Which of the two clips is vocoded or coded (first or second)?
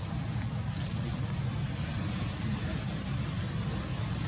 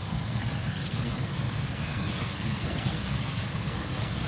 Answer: second